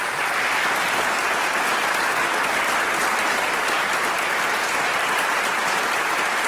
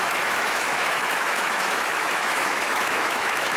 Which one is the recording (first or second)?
first